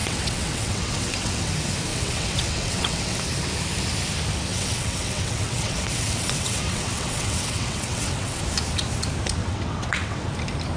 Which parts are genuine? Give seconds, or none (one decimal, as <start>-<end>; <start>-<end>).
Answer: 1.5-1.9; 3.2-4.5; 8.4-9.4; 10.3-10.8